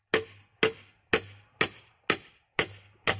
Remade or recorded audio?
recorded